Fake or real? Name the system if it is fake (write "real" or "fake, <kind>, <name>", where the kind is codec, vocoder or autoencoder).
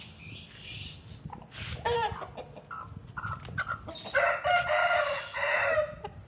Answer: real